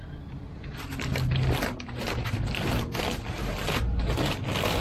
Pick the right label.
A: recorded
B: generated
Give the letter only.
A